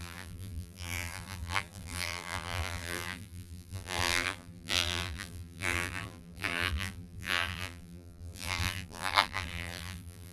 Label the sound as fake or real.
fake